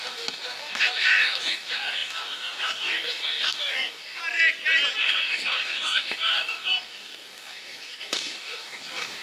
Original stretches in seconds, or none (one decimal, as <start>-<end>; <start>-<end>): 4.2-5.0